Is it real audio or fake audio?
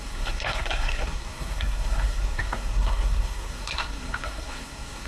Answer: fake